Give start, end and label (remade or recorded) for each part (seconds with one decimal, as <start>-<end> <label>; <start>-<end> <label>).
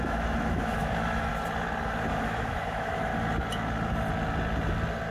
0.0-1.3 remade; 1.3-2.1 recorded; 2.1-3.1 remade; 3.1-5.1 recorded